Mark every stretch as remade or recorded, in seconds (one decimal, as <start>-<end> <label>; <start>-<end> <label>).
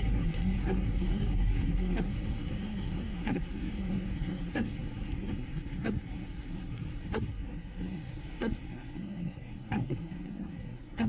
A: 0.0-11.1 remade